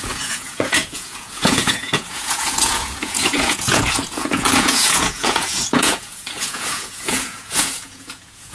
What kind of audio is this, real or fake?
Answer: fake